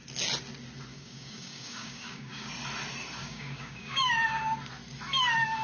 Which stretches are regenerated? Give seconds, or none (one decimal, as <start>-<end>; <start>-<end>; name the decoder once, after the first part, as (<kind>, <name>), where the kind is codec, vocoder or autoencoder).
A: 0.9-2.5 (codec, DAC); 3.2-4.1